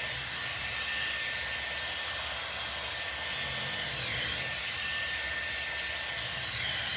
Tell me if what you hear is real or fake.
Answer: real